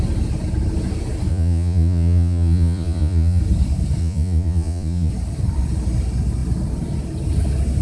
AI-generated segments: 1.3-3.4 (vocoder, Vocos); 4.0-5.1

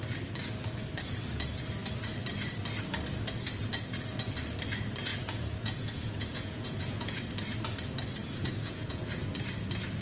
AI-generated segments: 5.1-7.2 (vocoder, Vocos); 8.2-9.0